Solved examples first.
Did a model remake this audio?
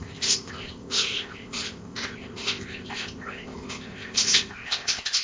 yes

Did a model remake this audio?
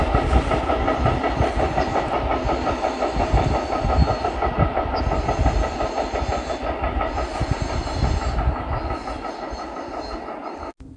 no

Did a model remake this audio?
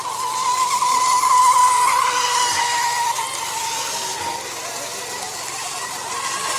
no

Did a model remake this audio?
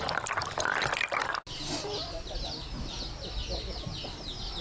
no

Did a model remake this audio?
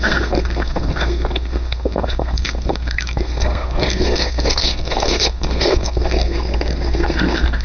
yes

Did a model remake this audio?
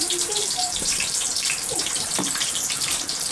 yes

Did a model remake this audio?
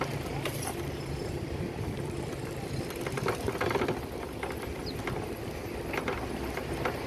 yes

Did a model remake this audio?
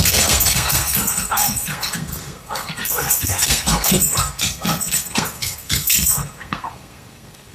yes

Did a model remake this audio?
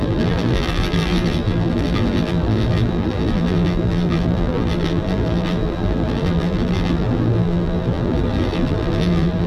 yes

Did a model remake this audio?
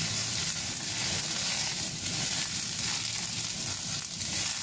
no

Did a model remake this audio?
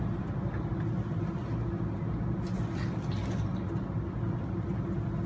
no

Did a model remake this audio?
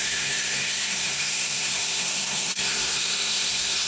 yes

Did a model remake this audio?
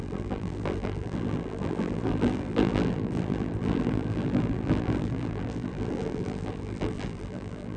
yes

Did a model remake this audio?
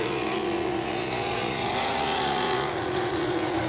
yes